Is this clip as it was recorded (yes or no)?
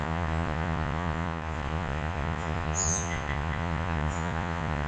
no